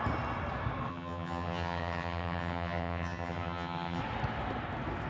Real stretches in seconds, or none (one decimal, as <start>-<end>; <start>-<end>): 0.0-0.9; 4.0-5.1